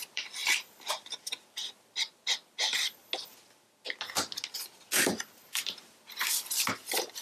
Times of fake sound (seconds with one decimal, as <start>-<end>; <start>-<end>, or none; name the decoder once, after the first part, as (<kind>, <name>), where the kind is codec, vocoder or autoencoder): 0.0-1.6 (vocoder, BigVGAN v2); 5.8-7.2